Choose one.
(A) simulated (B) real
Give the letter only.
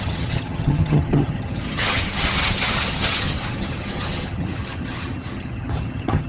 A